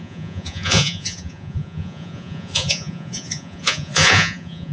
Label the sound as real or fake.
fake